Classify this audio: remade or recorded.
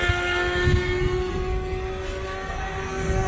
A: remade